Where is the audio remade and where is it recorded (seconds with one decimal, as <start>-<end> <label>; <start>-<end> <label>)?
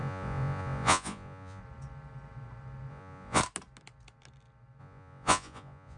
0.0-1.6 remade; 1.6-2.9 recorded; 2.9-3.4 remade; 3.4-4.8 recorded; 4.8-6.0 remade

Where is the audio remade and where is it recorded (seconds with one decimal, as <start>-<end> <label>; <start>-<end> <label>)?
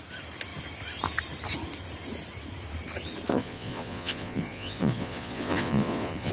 0.0-3.3 recorded; 3.3-6.3 remade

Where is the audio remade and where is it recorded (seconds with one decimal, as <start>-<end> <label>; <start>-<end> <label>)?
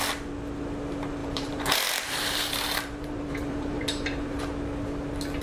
0.0-1.2 recorded; 1.2-4.4 remade; 4.4-5.4 recorded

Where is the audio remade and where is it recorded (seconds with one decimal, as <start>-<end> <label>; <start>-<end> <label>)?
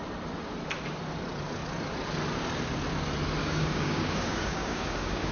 0.0-3.4 recorded; 3.4-5.3 remade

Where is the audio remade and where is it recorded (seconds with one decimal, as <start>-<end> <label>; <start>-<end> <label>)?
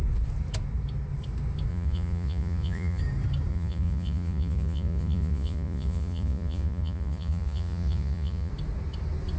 0.0-1.7 recorded; 1.7-3.0 remade; 3.0-3.5 recorded; 3.5-8.5 remade; 8.5-9.4 recorded